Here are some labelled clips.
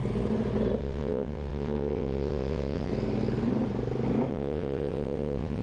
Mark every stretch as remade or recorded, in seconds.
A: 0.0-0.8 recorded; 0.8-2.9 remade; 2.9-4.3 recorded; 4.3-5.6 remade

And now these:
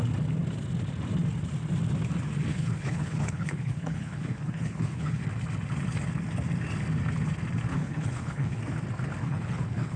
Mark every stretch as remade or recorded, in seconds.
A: 0.0-2.5 recorded; 2.5-5.2 remade; 5.2-7.7 recorded; 7.7-8.6 remade; 8.6-9.2 recorded; 9.2-10.0 remade